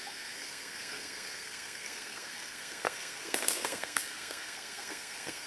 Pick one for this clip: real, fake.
fake